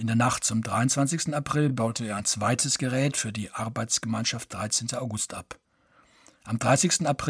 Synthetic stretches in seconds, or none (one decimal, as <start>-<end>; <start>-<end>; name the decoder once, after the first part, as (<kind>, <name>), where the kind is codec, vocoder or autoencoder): 1.7-2.2 (codec, SNAC)

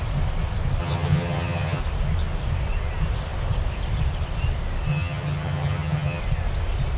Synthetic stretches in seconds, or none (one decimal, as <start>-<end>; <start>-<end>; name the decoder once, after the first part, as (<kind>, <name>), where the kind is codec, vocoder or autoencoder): 0.8-1.8 (vocoder, HiFi-GAN); 4.9-6.2

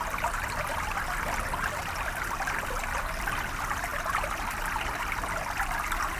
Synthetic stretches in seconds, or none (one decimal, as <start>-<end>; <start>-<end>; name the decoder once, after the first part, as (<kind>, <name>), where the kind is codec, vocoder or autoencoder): 0.0-3.9 (vocoder, BigVGAN v2); 5.0-6.2